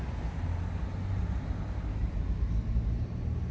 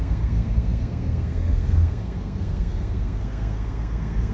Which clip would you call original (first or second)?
first